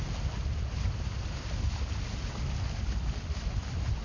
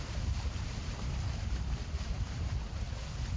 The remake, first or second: second